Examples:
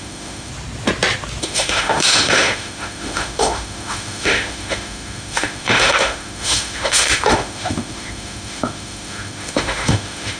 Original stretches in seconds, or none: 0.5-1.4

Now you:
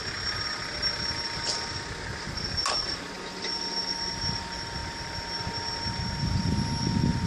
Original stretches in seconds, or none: 0.0-7.3

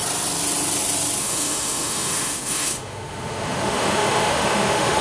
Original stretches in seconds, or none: 0.0-1.2

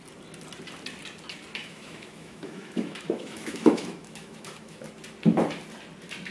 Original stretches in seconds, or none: 0.0-1.6; 4.9-6.3

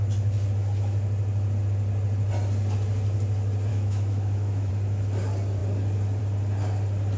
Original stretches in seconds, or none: 0.0-3.7; 4.7-7.2